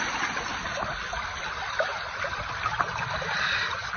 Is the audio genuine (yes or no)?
yes